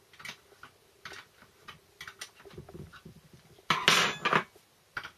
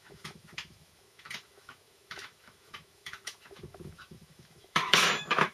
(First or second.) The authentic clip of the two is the first